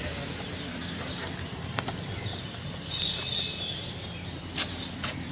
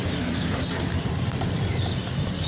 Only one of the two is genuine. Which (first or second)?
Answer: first